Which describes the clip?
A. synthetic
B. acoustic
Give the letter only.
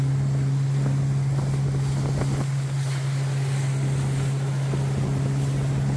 B